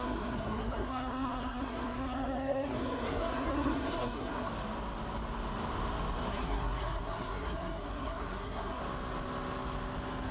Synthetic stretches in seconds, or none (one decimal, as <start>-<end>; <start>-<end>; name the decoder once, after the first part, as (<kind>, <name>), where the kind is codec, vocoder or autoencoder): 0.0-4.5 (codec, SNAC); 6.3-8.8